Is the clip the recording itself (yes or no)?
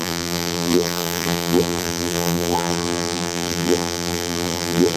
no